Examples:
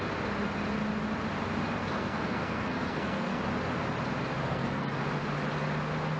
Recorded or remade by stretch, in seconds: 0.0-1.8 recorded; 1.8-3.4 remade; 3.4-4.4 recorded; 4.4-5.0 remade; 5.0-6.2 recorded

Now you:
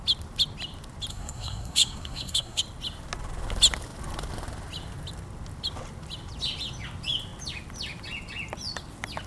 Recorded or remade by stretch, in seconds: 0.0-1.1 recorded; 1.1-2.6 remade; 2.6-9.3 recorded

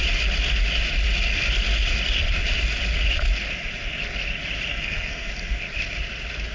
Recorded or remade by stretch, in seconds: 0.0-4.7 recorded; 4.7-5.3 remade; 5.3-6.5 recorded

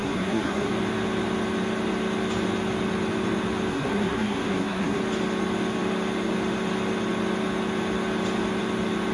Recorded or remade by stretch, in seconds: 0.0-0.7 remade; 0.7-3.7 recorded; 3.7-5.0 remade; 5.0-9.1 recorded